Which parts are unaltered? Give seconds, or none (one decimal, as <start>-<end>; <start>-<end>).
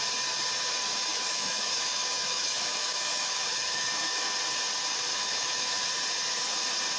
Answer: 0.0-1.1; 4.3-5.1; 5.9-7.0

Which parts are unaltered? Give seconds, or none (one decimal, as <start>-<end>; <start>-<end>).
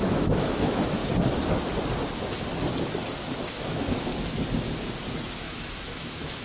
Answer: 1.0-3.5; 4.1-5.4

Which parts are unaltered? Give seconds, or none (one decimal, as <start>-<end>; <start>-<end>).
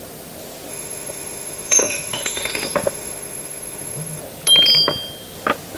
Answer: 0.0-0.7; 4.2-5.8